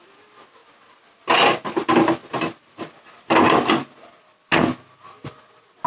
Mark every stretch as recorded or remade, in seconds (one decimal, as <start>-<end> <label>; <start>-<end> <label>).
0.0-5.9 recorded